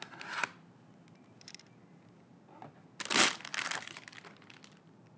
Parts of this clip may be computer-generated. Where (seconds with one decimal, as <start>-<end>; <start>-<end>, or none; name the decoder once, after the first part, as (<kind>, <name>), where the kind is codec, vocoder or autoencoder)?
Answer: none